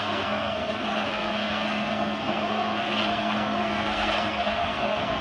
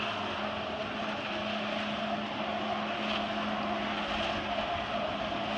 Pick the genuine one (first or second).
second